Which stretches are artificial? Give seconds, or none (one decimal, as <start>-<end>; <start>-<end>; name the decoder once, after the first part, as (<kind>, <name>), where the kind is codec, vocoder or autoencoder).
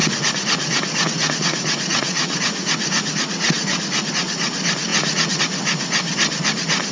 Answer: 0.0-4.1 (vocoder, Vocos); 4.9-5.4